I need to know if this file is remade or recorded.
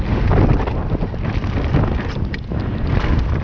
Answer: recorded